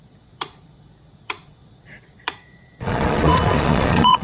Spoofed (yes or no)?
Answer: yes